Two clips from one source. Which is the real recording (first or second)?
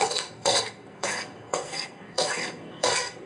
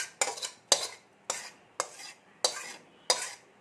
second